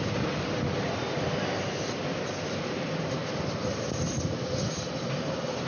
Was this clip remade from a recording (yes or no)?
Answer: no